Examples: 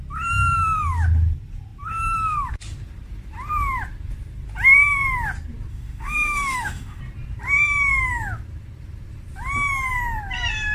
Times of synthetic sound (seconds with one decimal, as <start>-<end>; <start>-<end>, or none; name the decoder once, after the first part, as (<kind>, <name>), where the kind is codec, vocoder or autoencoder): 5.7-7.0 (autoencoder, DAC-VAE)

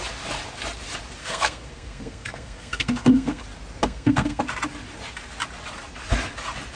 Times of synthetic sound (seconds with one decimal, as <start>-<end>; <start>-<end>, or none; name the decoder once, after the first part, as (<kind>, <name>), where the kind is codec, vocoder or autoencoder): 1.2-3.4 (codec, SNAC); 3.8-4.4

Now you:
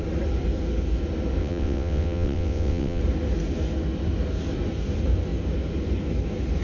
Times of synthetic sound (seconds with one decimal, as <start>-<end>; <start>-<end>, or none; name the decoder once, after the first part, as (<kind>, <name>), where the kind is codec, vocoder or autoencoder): 1.4-3.0 (vocoder, WaveNeXt)

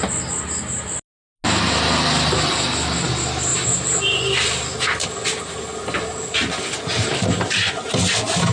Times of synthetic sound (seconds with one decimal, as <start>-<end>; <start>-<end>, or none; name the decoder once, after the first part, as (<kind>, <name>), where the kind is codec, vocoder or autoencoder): none

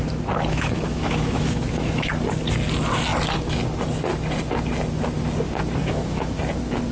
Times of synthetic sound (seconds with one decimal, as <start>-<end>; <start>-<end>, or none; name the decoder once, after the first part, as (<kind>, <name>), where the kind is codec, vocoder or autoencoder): 0.5-2.1 (autoencoder, DAC-VAE); 5.8-6.4